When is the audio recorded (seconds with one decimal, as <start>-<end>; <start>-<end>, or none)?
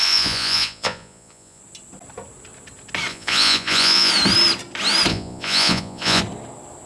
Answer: 1.6-3.1; 4.1-5.1; 6.2-6.9